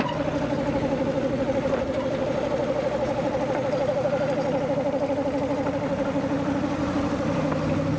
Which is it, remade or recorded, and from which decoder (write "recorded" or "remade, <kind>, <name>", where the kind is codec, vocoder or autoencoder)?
recorded